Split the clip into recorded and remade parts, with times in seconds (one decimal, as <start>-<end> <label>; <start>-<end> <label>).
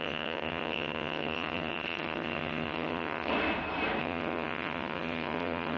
0.0-3.3 remade; 3.3-4.0 recorded; 4.0-5.8 remade